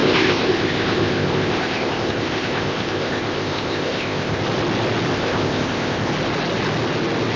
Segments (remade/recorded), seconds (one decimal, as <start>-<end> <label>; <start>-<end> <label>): 0.0-4.4 remade; 4.4-5.1 recorded; 5.1-6.1 remade; 6.1-7.4 recorded